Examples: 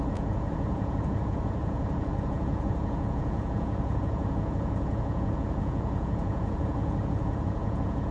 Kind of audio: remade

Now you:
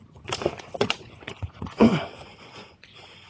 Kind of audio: remade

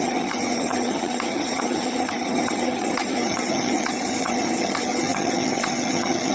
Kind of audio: remade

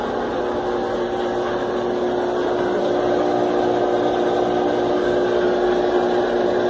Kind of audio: recorded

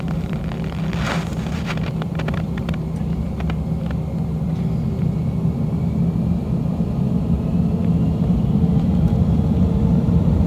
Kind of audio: remade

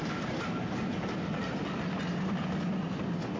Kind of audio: recorded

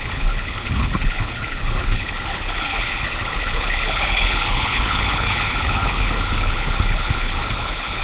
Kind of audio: remade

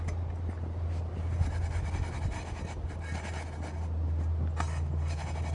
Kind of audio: recorded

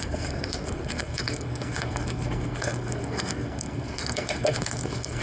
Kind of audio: remade